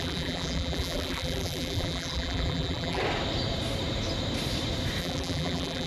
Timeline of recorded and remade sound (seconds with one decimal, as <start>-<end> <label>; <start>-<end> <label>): 0.0-3.0 remade; 3.0-5.0 recorded; 5.0-5.9 remade